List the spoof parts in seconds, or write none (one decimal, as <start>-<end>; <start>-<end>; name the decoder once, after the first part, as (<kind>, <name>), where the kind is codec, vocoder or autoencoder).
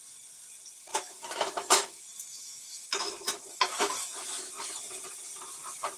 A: 0.9-4.5 (autoencoder, DAC-VAE)